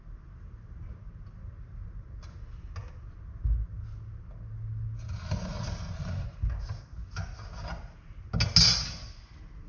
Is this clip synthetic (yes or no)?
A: no